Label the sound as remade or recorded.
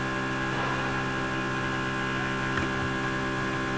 recorded